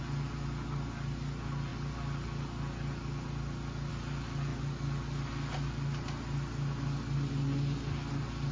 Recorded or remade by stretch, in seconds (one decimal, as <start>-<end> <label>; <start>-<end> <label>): 0.0-8.5 recorded